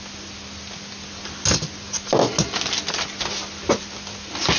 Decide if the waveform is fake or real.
real